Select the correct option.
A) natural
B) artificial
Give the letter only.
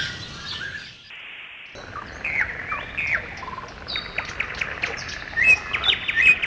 A